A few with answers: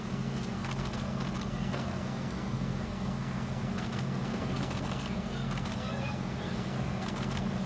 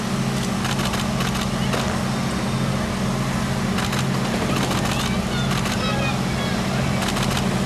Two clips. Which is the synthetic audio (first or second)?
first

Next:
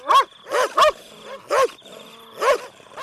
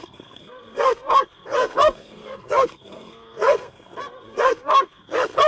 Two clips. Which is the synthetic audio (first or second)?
second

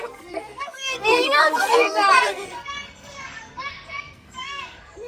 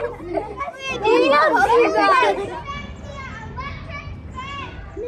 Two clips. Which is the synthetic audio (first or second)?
first